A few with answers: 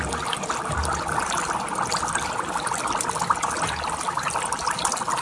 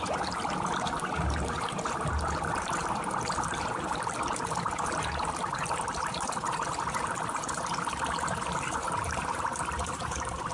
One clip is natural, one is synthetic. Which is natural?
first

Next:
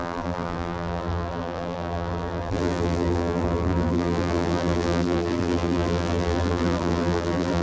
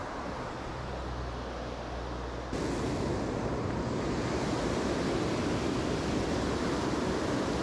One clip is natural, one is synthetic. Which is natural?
second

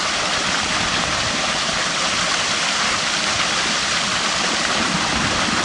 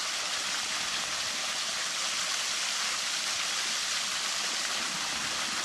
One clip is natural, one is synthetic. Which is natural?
second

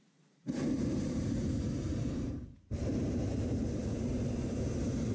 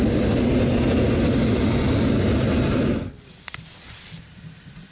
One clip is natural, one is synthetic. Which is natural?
second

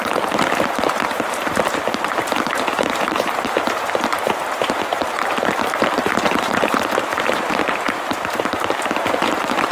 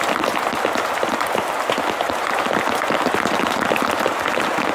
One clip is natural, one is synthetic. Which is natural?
second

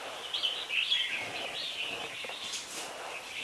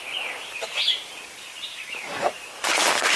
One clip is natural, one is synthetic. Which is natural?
first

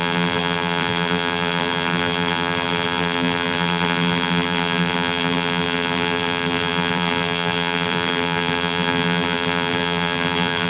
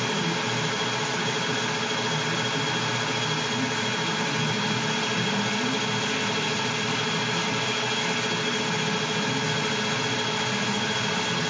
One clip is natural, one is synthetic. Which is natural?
second